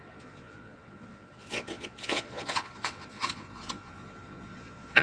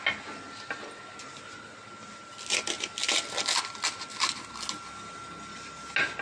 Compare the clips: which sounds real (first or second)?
second